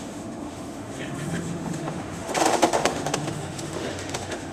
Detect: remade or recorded remade